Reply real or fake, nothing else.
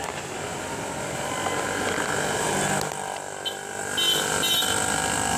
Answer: real